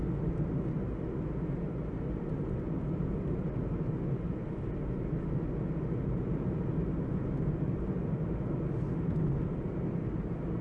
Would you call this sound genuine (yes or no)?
yes